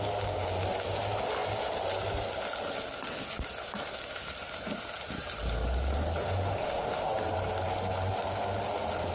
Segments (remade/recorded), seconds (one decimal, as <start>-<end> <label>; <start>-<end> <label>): 0.0-6.2 recorded; 6.2-7.1 remade; 7.1-9.1 recorded